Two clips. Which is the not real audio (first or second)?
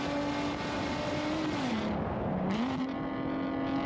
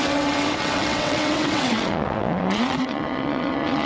second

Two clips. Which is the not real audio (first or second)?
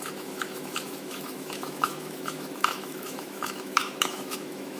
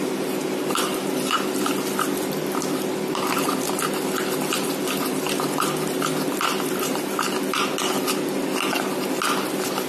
first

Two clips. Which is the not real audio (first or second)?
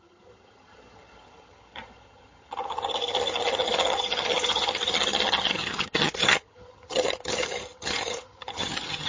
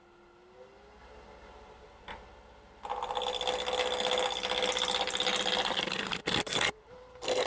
first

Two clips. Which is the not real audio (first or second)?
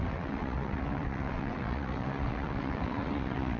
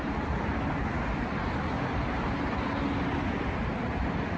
first